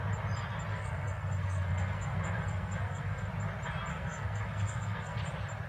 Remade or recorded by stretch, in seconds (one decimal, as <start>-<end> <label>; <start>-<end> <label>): 0.0-0.7 recorded; 0.7-3.3 remade; 3.3-3.9 recorded; 3.9-5.2 remade; 5.2-5.7 recorded